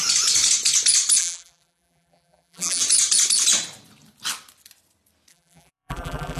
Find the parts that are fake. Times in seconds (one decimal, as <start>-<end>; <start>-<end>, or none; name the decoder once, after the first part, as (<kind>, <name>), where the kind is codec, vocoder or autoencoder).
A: 1.2-2.8 (vocoder, BigVGAN v2); 5.3-6.4